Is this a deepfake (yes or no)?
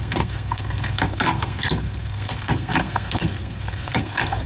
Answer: yes